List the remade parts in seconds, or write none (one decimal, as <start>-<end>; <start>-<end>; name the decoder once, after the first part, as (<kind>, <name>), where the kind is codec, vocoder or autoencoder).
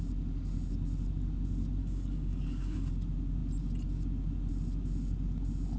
1.8-2.9 (codec, DAC)